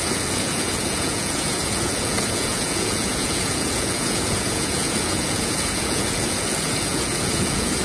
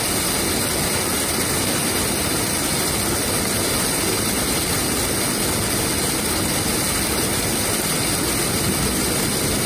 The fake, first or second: first